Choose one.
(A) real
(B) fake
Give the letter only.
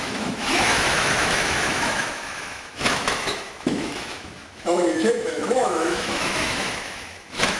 B